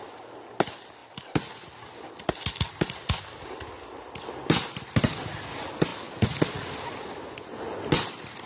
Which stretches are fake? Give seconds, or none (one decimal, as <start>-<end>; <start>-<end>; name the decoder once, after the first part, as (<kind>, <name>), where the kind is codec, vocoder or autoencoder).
none